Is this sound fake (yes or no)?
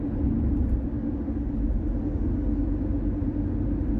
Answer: no